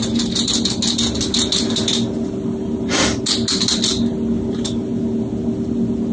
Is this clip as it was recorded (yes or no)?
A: yes